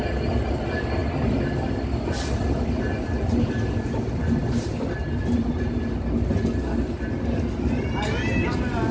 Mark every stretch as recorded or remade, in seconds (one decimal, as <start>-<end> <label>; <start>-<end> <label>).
0.0-8.9 recorded

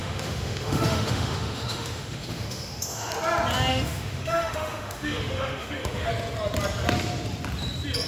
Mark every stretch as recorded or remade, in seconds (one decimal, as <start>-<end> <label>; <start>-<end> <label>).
0.0-3.1 remade; 3.1-3.7 recorded; 3.7-6.1 remade; 6.1-8.1 recorded

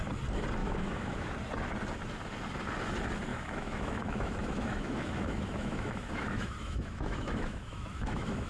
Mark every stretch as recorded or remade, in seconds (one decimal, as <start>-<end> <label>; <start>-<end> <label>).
0.0-0.6 recorded; 0.6-1.3 remade; 1.3-3.3 recorded; 3.3-8.5 remade

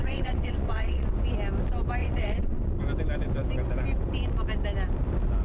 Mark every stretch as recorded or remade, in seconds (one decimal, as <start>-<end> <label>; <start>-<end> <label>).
0.0-1.1 remade; 1.1-2.0 recorded; 2.0-2.7 remade; 2.7-5.4 recorded